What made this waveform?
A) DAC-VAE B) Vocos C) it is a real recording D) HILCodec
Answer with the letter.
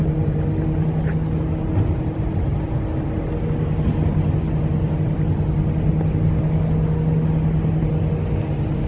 C